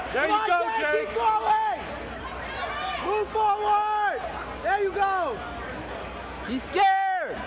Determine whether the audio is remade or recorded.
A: recorded